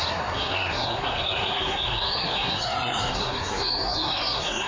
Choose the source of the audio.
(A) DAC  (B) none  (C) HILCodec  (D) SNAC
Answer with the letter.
D